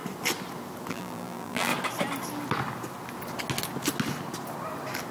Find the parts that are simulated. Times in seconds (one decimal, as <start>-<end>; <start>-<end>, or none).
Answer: 0.9-1.7